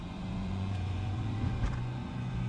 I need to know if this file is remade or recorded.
remade